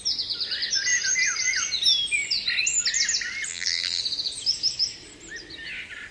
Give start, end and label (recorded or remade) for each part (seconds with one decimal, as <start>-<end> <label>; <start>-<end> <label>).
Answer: 0.0-3.5 recorded; 3.5-4.0 remade; 4.0-6.1 recorded